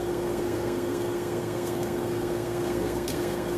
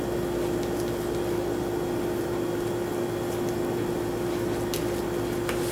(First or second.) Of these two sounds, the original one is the second